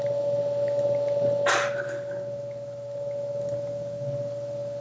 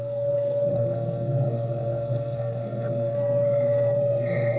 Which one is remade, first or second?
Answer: second